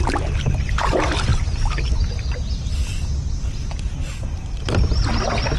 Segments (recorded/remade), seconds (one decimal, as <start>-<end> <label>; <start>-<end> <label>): 0.0-5.6 recorded